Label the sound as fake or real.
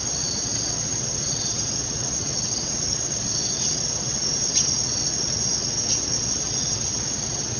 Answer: fake